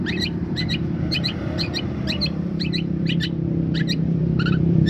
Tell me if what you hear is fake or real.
fake